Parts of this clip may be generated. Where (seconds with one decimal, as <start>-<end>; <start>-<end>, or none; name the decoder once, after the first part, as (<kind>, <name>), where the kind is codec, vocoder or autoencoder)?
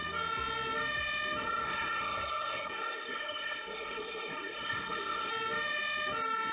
1.4-5.3 (codec, SNAC)